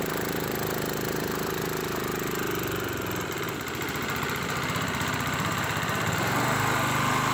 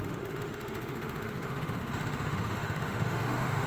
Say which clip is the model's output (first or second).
second